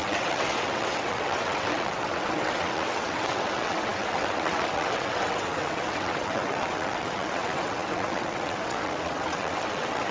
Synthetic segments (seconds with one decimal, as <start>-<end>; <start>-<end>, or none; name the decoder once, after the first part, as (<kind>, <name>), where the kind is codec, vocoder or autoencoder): 0.0-10.1 (vocoder, WaveNeXt)